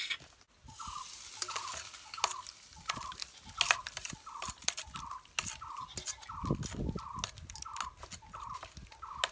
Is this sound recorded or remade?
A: recorded